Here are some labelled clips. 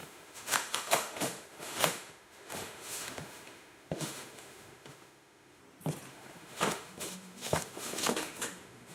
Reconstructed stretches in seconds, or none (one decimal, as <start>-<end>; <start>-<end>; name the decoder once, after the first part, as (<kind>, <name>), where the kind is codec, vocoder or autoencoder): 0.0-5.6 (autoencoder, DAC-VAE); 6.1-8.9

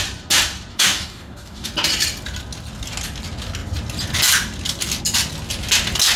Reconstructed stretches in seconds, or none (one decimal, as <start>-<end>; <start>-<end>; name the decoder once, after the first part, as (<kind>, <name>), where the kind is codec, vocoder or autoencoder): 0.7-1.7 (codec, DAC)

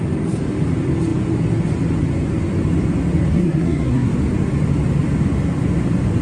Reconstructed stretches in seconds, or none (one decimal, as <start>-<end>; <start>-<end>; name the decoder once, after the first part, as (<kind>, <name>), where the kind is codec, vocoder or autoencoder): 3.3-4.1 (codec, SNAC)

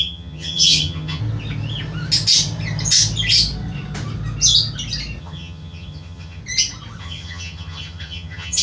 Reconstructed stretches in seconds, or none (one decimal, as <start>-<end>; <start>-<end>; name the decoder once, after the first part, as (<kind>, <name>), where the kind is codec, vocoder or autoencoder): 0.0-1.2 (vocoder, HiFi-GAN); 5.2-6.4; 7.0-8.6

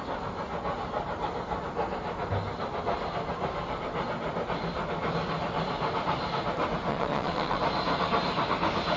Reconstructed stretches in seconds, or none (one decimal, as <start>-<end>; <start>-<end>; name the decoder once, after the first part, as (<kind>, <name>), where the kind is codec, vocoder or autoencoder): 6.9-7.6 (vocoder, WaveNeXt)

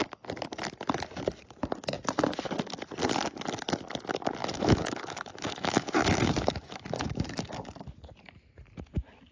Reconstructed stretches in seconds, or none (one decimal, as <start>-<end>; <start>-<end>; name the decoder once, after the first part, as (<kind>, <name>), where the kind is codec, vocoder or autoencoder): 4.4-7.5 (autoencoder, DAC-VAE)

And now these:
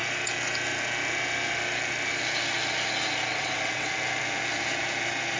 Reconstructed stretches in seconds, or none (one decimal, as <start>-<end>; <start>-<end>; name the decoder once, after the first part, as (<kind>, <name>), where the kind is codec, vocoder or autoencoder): 3.3-3.9 (vocoder, WaveNeXt)

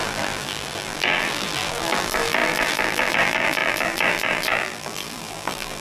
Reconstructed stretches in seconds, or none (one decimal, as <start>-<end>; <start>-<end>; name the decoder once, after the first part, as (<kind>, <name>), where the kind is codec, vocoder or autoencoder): 0.0-5.8 (vocoder, BigVGAN v2)